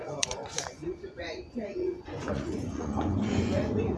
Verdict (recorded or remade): remade